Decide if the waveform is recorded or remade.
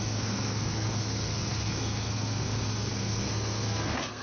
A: remade